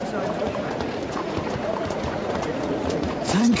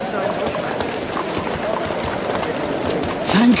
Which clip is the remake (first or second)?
first